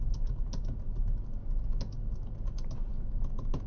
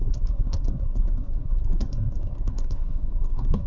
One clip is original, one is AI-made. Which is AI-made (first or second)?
second